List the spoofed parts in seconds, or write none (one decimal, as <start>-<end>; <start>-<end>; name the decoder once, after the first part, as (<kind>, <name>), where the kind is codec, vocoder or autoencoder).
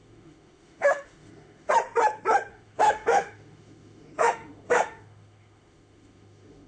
0.0-1.7 (autoencoder, DAC-VAE); 2.5-6.7